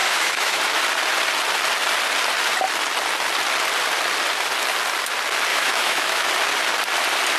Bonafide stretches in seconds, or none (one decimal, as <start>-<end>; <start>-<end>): 0.6-5.5; 6.3-7.4